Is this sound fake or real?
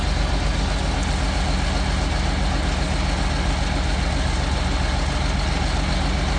real